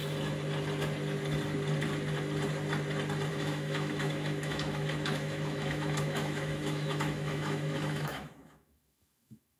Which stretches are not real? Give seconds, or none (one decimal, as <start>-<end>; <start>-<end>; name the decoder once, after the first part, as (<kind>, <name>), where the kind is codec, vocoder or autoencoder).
3.3-9.6 (autoencoder, DAC-VAE)